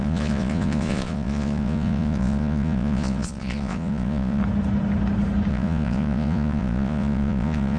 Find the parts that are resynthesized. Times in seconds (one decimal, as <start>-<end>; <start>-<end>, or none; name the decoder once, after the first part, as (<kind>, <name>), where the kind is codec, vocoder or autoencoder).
0.0-4.4 (vocoder, Vocos); 5.5-7.8